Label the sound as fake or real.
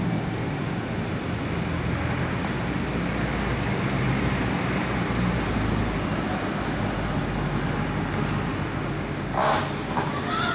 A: real